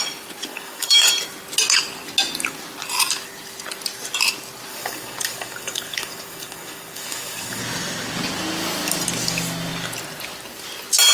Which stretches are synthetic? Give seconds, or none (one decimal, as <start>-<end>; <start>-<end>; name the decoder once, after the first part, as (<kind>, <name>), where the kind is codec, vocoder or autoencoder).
0.5-1.1 (codec, DAC); 4.7-7.6